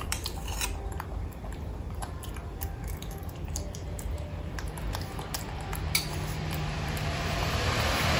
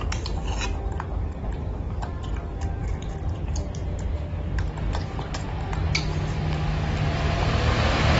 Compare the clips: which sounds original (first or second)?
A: second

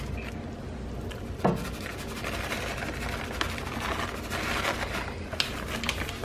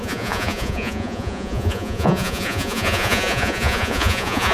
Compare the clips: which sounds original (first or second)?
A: first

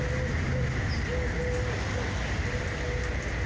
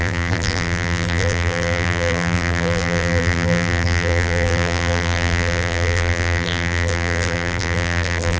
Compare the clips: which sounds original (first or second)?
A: first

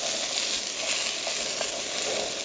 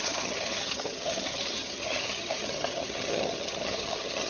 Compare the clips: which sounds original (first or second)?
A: first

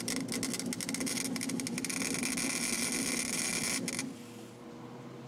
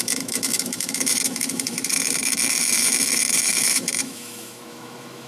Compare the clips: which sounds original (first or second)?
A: first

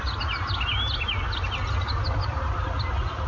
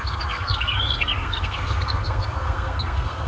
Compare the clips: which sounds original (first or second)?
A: first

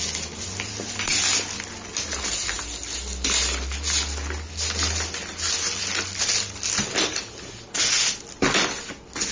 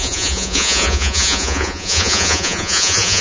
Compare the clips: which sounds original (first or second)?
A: first